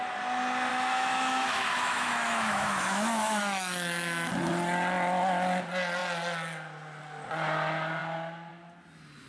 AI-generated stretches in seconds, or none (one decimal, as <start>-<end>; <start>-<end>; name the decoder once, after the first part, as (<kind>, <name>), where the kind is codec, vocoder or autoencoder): 0.7-4.3 (autoencoder, DAC-VAE)